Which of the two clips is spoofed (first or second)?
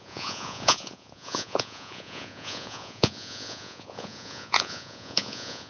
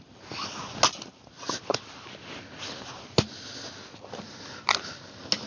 first